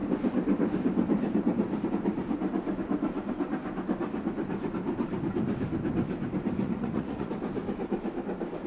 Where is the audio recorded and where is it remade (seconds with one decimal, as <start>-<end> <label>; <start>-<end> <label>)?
0.0-6.6 recorded; 6.6-7.3 remade; 7.3-8.7 recorded